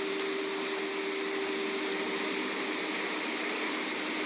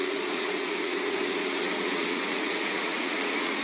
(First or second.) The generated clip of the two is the second